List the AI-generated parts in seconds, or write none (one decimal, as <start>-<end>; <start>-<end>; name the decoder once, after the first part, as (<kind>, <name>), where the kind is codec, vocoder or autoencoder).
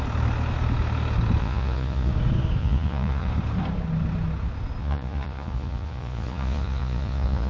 1.4-2.1 (vocoder, Vocos); 2.6-3.3; 4.8-7.5